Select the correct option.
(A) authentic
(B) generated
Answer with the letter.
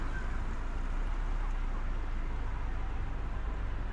A